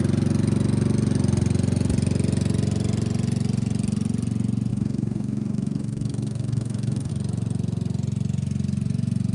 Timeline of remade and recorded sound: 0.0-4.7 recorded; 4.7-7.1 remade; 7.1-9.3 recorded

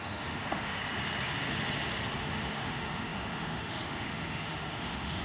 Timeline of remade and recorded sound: 0.0-0.8 remade; 0.8-2.2 recorded; 2.2-5.2 remade

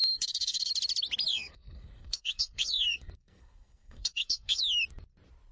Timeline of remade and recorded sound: 0.0-0.7 remade; 0.7-1.3 recorded; 1.3-4.6 remade; 4.6-5.5 recorded

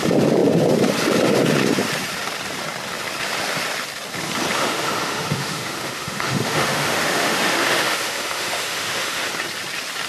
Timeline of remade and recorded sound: 0.0-4.5 recorded; 4.5-9.3 remade; 9.3-10.1 recorded

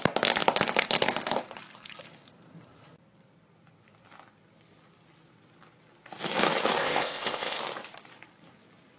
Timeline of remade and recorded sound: 0.0-6.8 recorded; 6.8-7.6 remade; 7.6-9.0 recorded

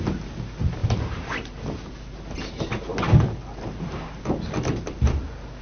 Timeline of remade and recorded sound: 0.0-0.8 recorded; 0.8-1.5 remade; 1.5-5.6 recorded